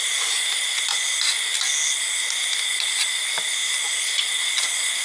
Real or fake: real